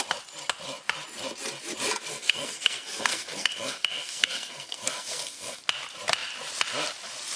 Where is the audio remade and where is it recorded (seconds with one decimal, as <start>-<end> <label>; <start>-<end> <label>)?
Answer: 0.0-2.1 recorded; 2.1-5.6 remade; 5.6-7.4 recorded